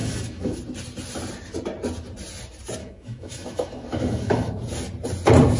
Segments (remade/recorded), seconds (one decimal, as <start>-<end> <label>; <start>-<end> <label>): 0.0-0.6 remade; 0.6-2.8 recorded; 2.8-4.6 remade; 4.6-5.6 recorded